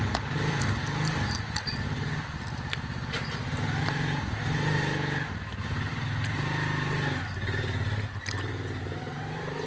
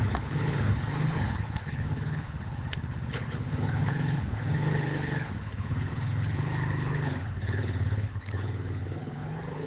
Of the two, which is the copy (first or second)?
second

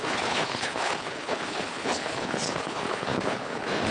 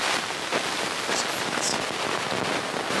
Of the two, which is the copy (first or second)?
first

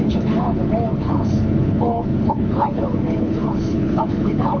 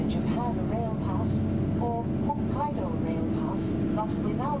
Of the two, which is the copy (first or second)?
first